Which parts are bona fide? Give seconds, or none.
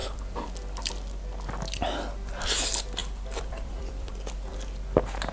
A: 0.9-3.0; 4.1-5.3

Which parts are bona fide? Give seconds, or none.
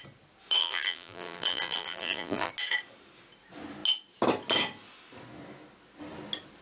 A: 0.0-0.6; 2.5-6.6